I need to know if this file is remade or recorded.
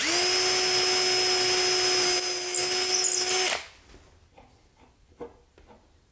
recorded